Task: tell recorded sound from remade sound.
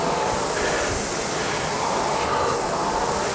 recorded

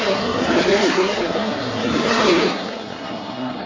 remade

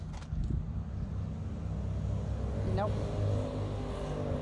recorded